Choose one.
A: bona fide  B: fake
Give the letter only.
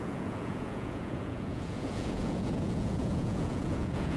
B